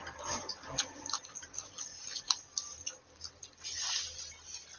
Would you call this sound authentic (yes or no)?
yes